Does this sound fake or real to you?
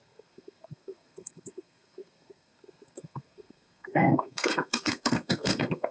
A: fake